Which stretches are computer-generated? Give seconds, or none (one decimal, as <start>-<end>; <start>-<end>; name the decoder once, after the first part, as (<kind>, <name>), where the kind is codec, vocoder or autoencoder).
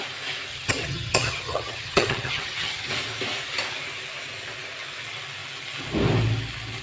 0.5-2.9 (vocoder, HiFi-GAN)